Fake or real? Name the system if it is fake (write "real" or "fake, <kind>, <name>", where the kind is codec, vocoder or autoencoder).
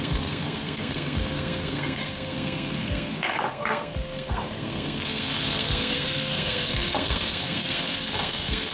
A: fake, codec, SNAC